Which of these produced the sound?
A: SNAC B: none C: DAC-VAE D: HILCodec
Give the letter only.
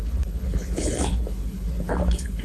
D